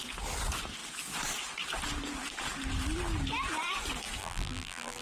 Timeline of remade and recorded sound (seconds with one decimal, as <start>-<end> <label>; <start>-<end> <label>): 0.0-4.2 recorded; 4.2-5.0 remade